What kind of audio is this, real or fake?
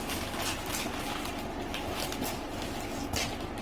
real